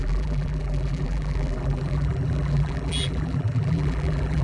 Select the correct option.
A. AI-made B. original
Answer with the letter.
A